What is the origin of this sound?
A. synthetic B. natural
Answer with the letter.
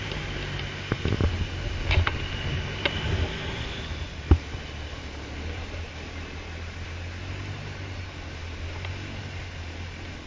B